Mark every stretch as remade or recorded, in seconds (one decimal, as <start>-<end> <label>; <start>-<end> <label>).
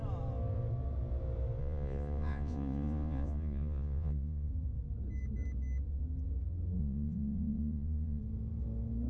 0.0-1.6 recorded; 1.6-4.5 remade; 4.5-6.8 recorded; 6.8-8.2 remade; 8.2-9.1 recorded